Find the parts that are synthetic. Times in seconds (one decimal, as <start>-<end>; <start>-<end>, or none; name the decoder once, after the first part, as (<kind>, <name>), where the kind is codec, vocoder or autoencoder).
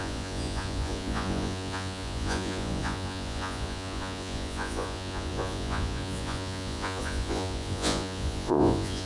0.0-9.1 (vocoder, Vocos)